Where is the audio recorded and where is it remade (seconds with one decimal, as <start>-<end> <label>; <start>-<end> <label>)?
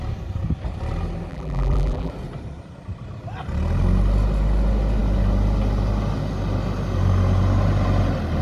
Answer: 0.0-1.3 recorded; 1.3-2.1 remade; 2.1-8.4 recorded